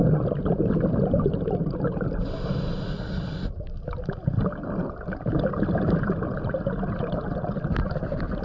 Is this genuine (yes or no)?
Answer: yes